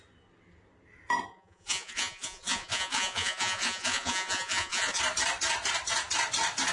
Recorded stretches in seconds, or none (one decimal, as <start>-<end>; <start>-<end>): 0.0-1.3; 5.0-6.7